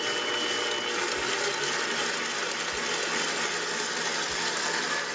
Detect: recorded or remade recorded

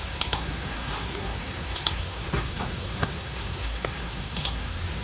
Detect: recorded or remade remade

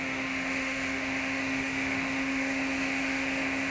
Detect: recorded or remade remade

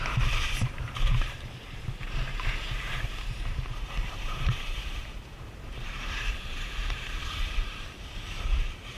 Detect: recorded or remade remade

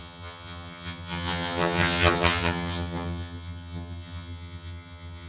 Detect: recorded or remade remade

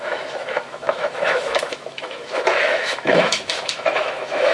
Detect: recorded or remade remade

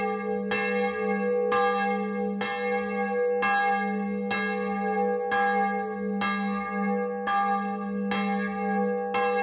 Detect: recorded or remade recorded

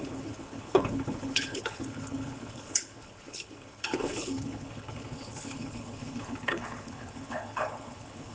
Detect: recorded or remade remade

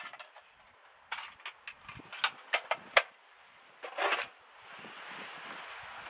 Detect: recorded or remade recorded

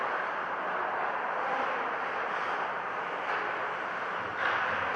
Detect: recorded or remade recorded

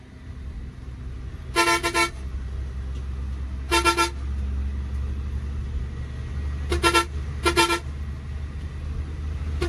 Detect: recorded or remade recorded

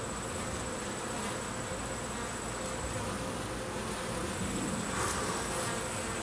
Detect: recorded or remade recorded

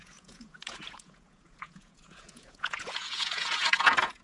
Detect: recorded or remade remade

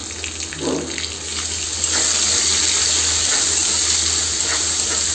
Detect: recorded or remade recorded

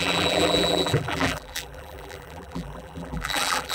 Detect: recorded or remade remade